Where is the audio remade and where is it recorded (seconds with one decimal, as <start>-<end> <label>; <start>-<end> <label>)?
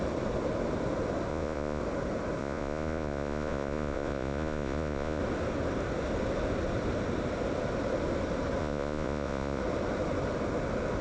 0.0-1.3 recorded; 1.3-1.8 remade; 1.8-2.4 recorded; 2.4-5.2 remade; 5.2-8.6 recorded; 8.6-9.6 remade; 9.6-11.0 recorded